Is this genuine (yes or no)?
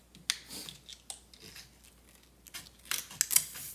yes